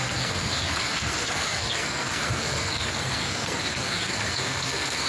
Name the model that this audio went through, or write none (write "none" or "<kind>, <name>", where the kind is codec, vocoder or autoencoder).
codec, SNAC